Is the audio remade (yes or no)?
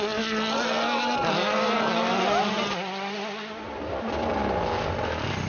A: no